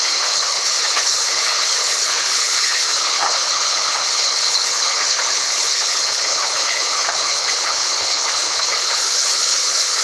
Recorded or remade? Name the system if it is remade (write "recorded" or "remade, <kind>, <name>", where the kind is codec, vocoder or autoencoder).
remade, codec, HILCodec